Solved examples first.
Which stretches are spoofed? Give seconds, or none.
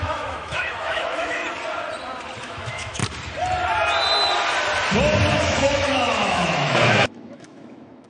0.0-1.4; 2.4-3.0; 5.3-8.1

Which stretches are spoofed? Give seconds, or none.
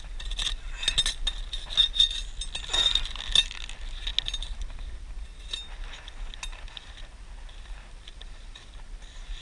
none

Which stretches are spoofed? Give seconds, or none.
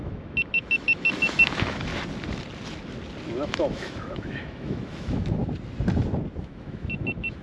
0.0-1.9; 3.3-5.4; 6.4-7.4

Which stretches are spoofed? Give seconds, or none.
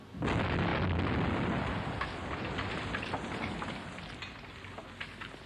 none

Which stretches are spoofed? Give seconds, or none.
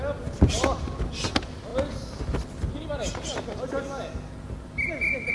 none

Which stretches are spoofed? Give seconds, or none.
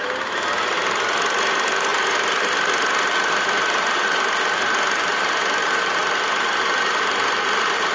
none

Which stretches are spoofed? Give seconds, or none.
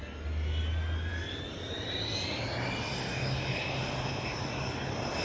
none